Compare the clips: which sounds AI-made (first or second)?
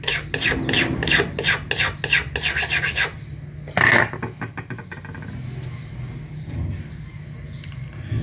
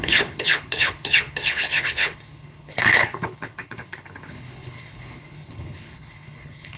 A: second